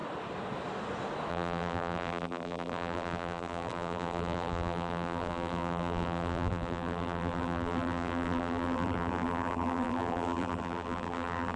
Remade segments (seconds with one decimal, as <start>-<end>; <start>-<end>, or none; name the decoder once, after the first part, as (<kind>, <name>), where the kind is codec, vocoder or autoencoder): 1.3-11.6 (vocoder, BigVGAN v2)